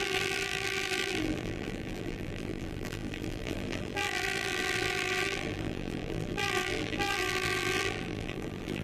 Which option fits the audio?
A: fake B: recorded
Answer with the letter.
A